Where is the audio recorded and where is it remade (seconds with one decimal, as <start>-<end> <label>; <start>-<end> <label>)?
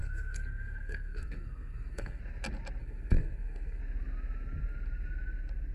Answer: 0.0-2.2 remade; 2.2-2.8 recorded; 2.8-3.8 remade; 3.8-5.7 recorded